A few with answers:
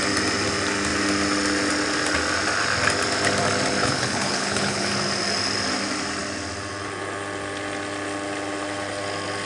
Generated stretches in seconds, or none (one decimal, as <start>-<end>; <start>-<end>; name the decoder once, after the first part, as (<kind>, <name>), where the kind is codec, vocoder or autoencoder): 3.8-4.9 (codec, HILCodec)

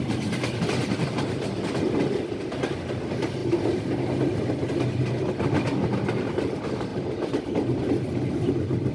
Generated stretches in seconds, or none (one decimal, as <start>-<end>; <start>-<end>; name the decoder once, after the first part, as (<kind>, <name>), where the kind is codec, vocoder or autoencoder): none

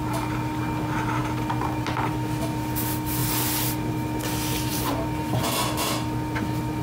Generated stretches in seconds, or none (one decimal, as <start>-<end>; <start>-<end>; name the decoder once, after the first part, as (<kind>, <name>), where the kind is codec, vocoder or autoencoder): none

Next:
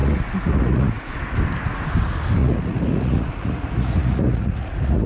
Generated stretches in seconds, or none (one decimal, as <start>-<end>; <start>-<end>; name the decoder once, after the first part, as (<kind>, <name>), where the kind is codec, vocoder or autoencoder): 0.0-1.1 (vocoder, Vocos); 2.4-5.1

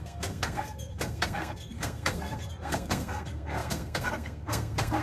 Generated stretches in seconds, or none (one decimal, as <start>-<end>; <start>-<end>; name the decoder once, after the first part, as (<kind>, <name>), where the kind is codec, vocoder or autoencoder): 0.0-5.0 (codec, SNAC)

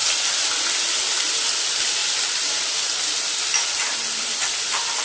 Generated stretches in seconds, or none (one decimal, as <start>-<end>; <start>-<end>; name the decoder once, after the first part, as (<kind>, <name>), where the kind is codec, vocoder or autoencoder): 1.1-5.0 (vocoder, BigVGAN v2)